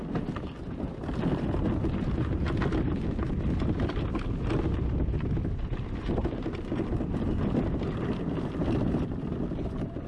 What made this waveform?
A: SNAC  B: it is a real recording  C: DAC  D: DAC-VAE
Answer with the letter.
B